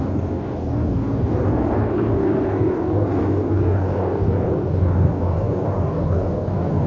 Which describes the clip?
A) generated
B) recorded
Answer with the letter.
A